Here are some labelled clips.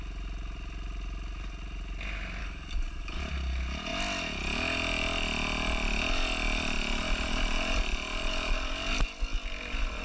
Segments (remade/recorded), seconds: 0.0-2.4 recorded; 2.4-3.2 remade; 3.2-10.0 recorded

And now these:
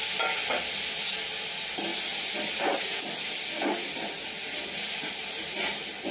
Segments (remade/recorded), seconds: 0.0-6.1 recorded

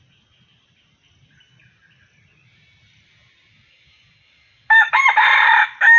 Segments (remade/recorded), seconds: 0.0-3.7 recorded; 3.7-4.9 remade; 4.9-6.0 recorded

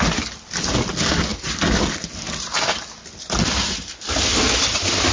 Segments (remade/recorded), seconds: 0.0-5.1 recorded

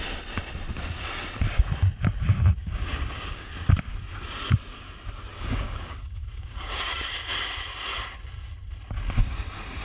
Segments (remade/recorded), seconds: 0.0-2.6 recorded; 2.6-3.5 remade; 3.5-5.3 recorded; 5.3-7.1 remade; 7.1-9.8 recorded

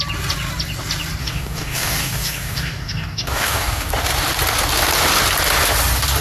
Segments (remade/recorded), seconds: 0.0-1.2 recorded; 1.2-3.9 remade; 3.9-6.2 recorded